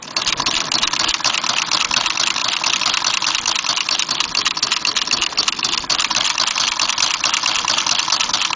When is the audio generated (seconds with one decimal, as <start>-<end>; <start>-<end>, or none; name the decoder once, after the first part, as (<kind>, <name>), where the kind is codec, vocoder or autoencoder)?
none